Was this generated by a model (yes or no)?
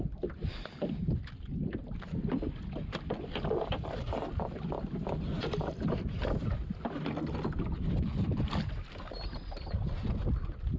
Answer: no